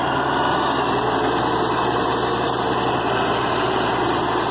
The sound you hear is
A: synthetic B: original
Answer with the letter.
B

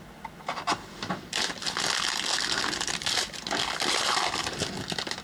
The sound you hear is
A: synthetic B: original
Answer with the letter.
B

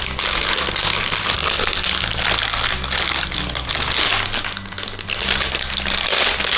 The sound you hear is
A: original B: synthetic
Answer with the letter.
A